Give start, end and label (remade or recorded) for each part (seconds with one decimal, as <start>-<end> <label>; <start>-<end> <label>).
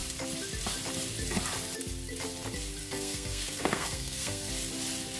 0.0-2.8 recorded; 2.8-4.5 remade; 4.5-5.2 recorded